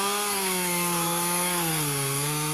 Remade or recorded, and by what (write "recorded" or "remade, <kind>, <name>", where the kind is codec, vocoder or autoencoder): remade, codec, SNAC